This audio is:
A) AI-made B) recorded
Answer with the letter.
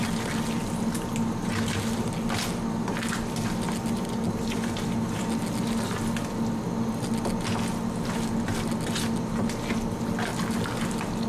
B